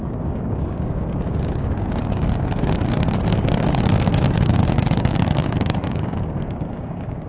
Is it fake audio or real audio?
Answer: fake